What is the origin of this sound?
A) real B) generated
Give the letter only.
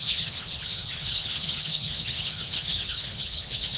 B